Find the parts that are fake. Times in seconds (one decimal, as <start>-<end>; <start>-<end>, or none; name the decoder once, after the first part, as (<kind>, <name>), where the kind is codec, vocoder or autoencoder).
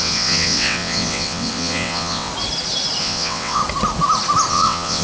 0.0-2.3 (vocoder, WaveNeXt); 3.0-3.6; 4.5-5.0